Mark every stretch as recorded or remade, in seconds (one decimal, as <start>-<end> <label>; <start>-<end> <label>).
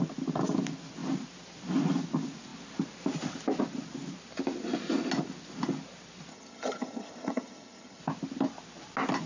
0.0-6.3 recorded; 6.3-8.0 remade; 8.0-9.3 recorded